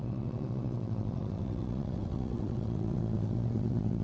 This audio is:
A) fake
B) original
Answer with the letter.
A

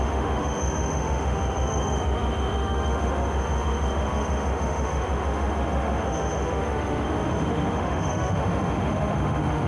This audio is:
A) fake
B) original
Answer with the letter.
A